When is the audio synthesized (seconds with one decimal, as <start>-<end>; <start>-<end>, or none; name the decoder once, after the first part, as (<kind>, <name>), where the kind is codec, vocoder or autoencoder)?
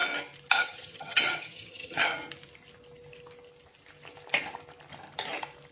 0.6-2.1 (vocoder, HiFi-GAN)